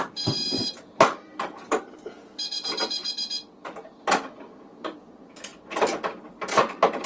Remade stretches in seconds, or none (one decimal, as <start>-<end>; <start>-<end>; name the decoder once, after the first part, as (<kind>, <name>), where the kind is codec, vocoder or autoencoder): 0.0-3.0 (vocoder, BigVGAN v2); 4.0-5.5; 6.4-7.1